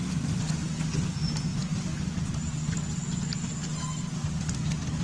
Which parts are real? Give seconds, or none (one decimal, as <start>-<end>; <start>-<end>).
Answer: 0.0-5.0